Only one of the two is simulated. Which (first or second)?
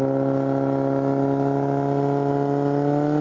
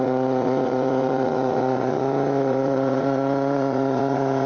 second